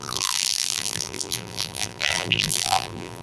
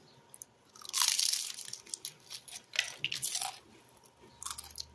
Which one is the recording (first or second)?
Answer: second